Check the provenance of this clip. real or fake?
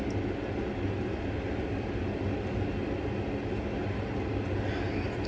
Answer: real